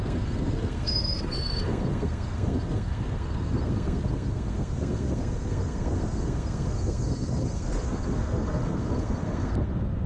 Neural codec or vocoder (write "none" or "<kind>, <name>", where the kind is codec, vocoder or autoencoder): codec, SNAC